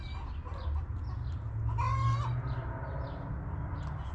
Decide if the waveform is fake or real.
real